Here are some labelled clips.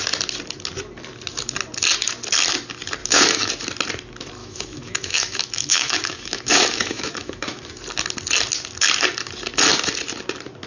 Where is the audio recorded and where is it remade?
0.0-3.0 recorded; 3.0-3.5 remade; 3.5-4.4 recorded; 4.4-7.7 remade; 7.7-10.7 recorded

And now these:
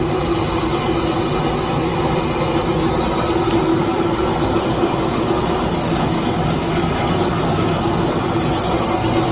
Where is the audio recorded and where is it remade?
0.0-3.7 recorded; 3.7-8.2 remade; 8.2-9.3 recorded